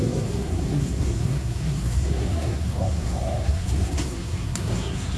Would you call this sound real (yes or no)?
no